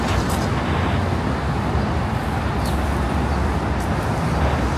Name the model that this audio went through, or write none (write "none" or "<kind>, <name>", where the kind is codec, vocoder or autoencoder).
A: none